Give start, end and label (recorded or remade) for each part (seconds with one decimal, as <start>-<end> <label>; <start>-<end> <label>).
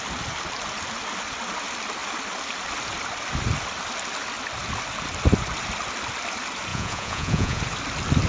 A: 0.0-6.7 recorded; 6.7-7.6 remade; 7.6-8.3 recorded